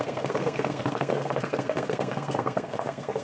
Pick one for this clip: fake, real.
fake